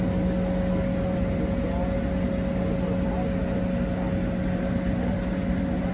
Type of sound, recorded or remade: recorded